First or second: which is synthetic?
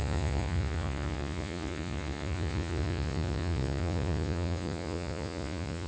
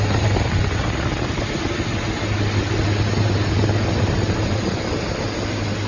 first